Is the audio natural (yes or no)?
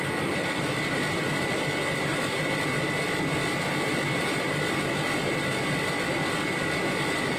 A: yes